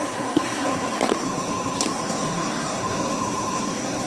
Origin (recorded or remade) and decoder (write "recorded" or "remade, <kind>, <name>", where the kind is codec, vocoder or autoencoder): remade, codec, SNAC